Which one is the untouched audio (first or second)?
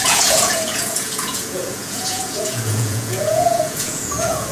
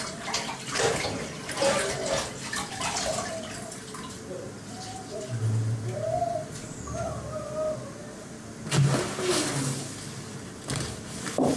second